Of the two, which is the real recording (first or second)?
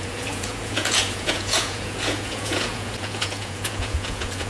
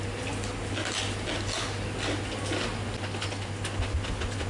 second